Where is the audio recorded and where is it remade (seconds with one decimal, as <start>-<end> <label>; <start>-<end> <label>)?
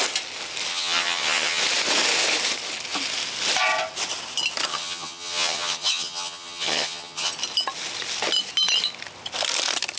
0.0-0.7 recorded; 0.7-1.6 remade; 1.6-4.7 recorded; 4.7-7.3 remade; 7.3-10.0 recorded